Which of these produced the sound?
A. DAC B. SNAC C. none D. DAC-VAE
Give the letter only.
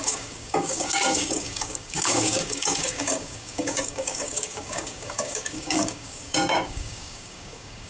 A